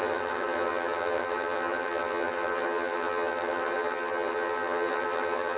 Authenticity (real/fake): fake